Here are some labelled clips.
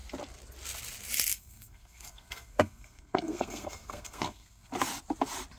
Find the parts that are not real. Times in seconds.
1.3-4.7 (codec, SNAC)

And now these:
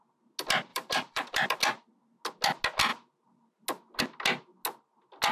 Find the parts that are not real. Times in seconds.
0.7-1.5 (vocoder, BigVGAN v2)

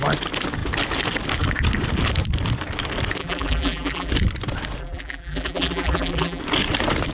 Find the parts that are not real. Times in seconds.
3.2-4.1 (vocoder, BigVGAN v2); 4.8-6.4

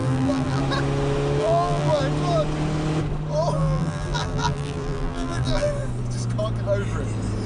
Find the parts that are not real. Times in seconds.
0.0-0.6 (vocoder, BigVGAN v2); 1.4-2.0; 3.6-5.7

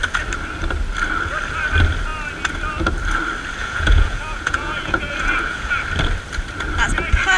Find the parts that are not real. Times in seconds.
3.6-5.8 (vocoder, Vocos)